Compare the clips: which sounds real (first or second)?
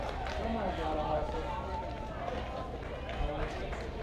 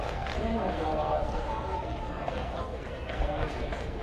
first